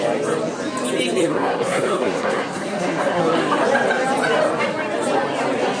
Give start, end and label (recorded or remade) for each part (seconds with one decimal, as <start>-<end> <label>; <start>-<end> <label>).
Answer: 0.0-1.2 recorded; 1.2-3.2 remade; 3.2-5.8 recorded